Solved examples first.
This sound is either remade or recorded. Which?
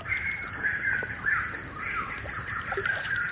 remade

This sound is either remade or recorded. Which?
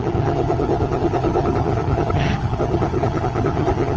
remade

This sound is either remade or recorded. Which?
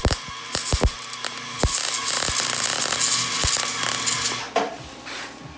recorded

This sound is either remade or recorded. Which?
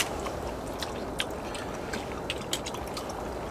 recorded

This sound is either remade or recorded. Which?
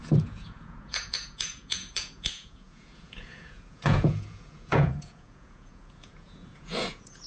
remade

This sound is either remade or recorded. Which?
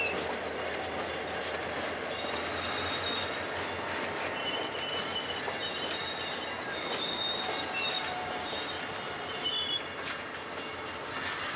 recorded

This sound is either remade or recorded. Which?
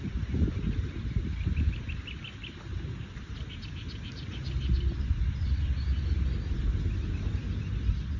recorded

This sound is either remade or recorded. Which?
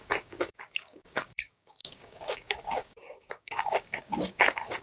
remade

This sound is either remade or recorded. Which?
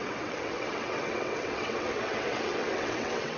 remade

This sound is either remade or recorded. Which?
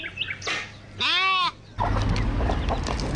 recorded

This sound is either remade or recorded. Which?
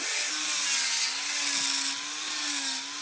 recorded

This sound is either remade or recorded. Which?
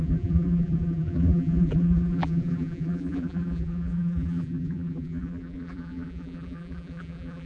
remade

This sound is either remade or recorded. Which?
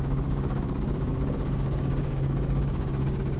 remade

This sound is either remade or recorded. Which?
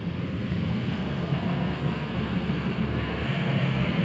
remade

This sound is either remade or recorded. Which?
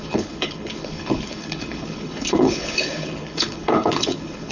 remade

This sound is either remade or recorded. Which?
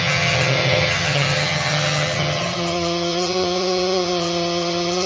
remade